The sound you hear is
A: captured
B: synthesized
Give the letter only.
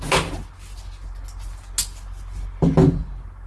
A